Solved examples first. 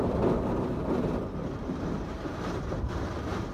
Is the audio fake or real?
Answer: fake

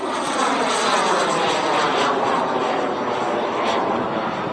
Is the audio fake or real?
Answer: real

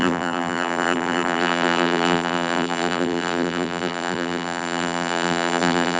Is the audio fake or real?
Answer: fake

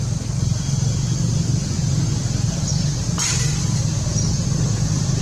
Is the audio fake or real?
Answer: real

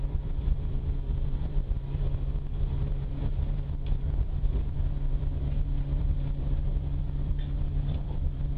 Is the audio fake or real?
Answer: fake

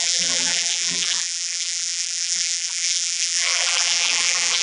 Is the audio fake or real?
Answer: fake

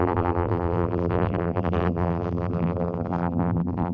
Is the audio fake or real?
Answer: fake